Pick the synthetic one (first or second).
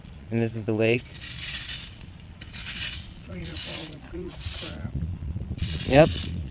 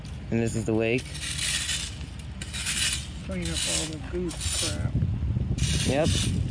first